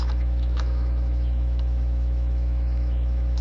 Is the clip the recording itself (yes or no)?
no